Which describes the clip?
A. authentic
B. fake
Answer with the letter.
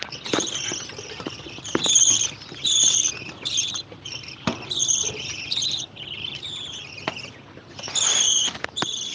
A